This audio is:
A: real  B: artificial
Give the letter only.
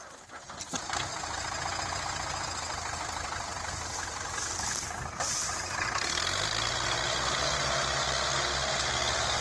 A